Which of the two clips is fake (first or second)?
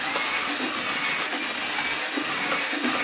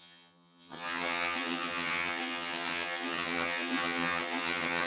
second